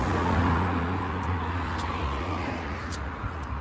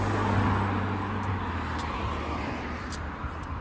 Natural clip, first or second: second